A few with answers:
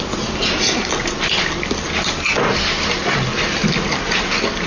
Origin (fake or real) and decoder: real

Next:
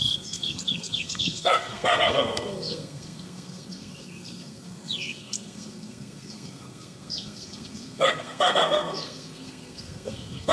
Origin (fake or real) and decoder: fake, codec, SNAC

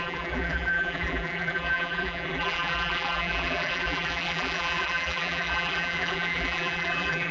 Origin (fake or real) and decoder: fake, vocoder, BigVGAN v2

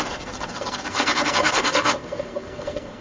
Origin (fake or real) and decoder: fake, codec, SNAC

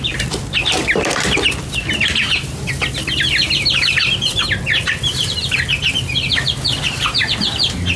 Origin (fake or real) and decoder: real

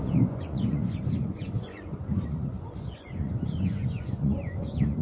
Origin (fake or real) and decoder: fake, vocoder, Vocos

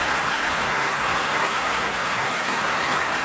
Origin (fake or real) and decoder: fake, codec, SNAC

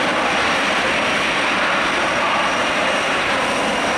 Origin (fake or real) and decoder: real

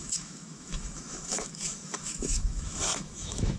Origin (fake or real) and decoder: fake, autoencoder, DAC-VAE